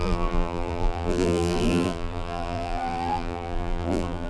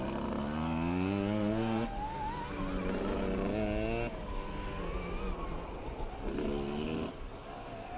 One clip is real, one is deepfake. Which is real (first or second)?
second